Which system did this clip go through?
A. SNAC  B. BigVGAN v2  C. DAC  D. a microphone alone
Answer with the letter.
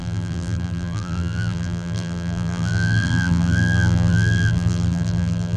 B